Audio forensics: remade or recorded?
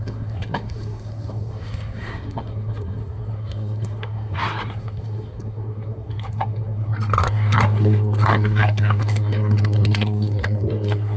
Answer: remade